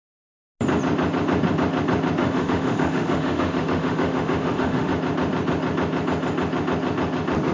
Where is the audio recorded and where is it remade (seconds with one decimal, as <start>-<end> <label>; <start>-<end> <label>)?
0.0-2.2 recorded; 2.2-4.9 remade; 4.9-7.5 recorded